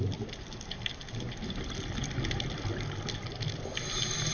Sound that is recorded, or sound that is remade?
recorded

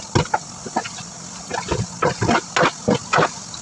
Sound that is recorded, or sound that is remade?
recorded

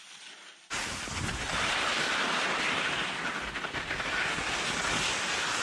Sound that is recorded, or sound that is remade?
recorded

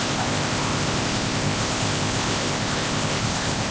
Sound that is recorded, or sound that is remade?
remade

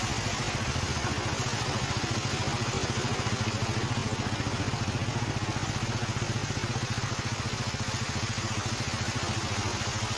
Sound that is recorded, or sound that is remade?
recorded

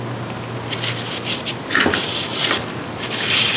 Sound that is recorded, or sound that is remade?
recorded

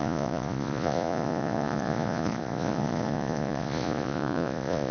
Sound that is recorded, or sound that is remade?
remade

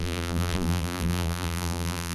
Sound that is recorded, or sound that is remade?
remade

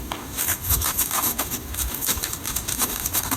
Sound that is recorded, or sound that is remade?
remade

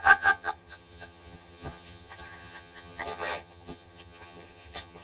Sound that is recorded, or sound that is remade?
remade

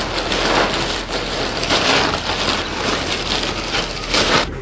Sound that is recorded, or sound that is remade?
recorded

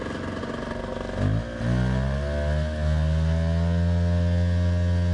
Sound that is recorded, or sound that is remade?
recorded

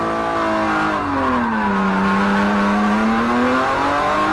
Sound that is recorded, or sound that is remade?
recorded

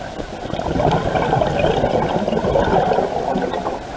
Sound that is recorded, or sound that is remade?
recorded